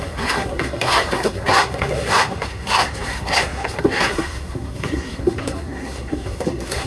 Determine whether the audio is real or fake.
fake